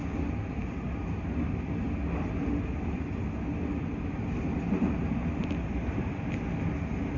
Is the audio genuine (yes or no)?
yes